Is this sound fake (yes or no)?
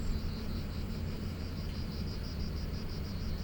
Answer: yes